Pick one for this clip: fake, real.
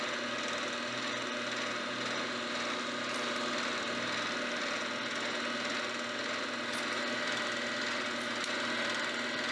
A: real